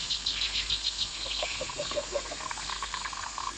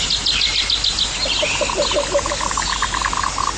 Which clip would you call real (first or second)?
second